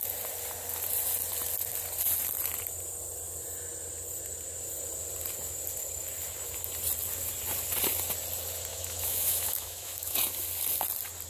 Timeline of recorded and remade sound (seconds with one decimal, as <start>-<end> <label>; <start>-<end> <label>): 0.0-8.7 recorded; 8.7-10.3 remade; 10.3-11.3 recorded